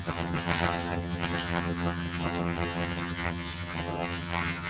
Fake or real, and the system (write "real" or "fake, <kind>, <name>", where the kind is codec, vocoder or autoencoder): fake, vocoder, HiFi-GAN